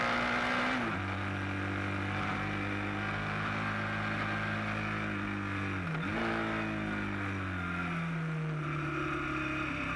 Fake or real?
real